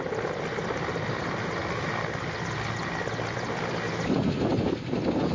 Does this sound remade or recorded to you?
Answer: recorded